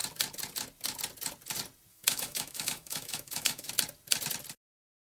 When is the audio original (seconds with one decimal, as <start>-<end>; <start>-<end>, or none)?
0.0-1.9; 3.7-5.2

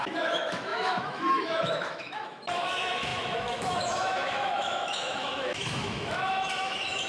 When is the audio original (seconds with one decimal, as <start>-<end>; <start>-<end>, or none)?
none

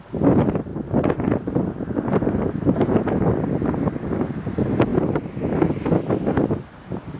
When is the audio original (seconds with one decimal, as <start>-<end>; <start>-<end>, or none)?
0.0-0.7; 3.3-6.3